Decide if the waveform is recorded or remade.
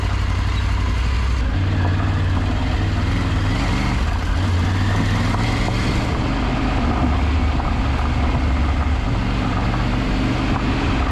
recorded